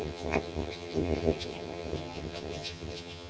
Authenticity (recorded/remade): remade